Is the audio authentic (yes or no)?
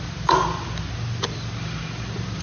yes